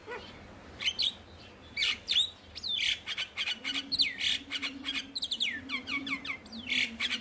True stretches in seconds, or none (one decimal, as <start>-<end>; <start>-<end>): 0.0-4.6